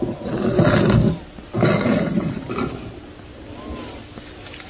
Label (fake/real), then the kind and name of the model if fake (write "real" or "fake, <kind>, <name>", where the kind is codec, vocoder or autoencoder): real